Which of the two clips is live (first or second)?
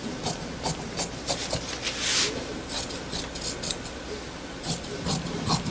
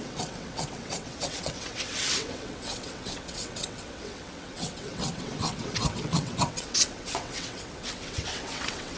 first